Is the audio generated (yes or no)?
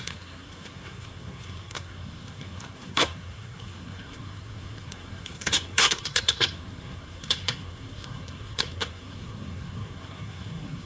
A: yes